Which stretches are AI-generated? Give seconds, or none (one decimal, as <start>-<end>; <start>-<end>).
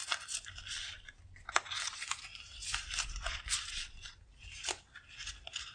none